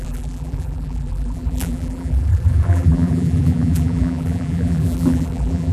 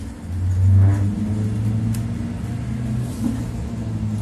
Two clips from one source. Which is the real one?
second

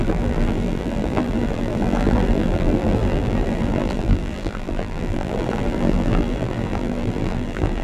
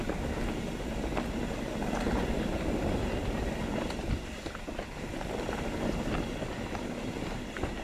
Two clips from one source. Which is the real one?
second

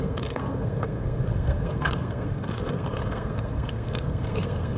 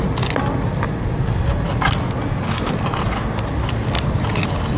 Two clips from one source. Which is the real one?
second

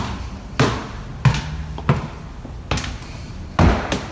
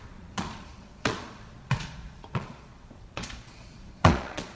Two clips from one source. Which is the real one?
first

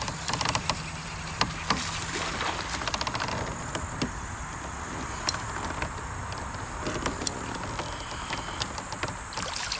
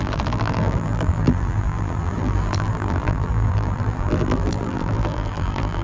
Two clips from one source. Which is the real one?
first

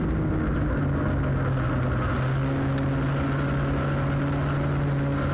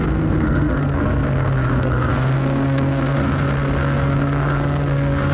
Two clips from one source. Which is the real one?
first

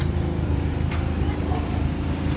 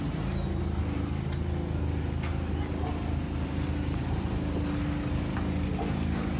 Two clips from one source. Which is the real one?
second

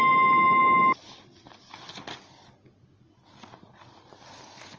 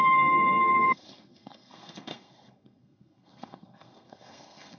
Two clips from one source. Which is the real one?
first